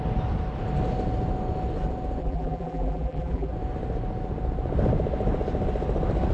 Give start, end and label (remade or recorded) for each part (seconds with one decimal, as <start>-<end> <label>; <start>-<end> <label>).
0.0-2.2 recorded; 2.2-3.5 remade; 3.5-6.3 recorded